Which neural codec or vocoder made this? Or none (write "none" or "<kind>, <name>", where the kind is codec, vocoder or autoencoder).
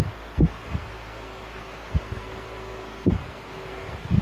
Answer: codec, SNAC